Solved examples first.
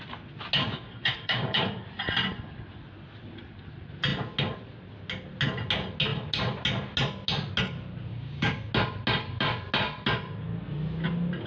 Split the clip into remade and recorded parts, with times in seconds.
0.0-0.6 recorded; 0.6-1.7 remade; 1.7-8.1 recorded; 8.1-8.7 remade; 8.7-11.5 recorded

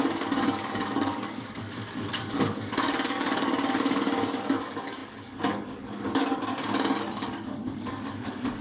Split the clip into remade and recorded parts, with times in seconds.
0.0-8.6 remade

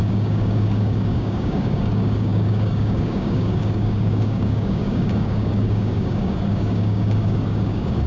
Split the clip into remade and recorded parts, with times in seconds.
0.0-8.1 remade

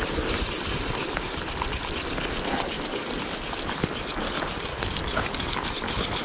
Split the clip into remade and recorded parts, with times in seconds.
0.0-4.7 recorded; 4.7-5.7 remade; 5.7-6.2 recorded

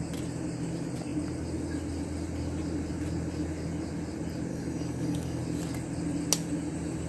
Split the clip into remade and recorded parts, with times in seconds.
0.0-4.5 recorded; 4.5-5.4 remade; 5.4-7.1 recorded